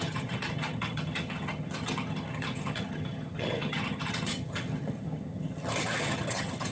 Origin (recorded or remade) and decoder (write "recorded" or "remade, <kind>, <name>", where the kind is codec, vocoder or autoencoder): remade, vocoder, HiFi-GAN